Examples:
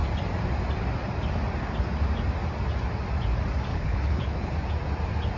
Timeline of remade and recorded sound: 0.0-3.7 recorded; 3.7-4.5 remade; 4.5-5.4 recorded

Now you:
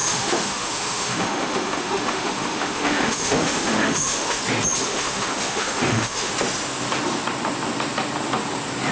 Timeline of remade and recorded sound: 0.0-4.4 remade; 4.4-4.9 recorded; 4.9-6.3 remade; 6.3-8.9 recorded